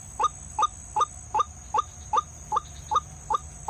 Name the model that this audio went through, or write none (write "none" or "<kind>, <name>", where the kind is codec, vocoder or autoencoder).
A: none